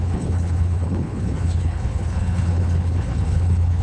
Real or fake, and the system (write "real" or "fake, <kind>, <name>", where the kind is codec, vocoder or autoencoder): fake, codec, HILCodec